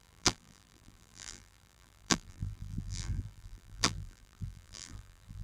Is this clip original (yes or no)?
no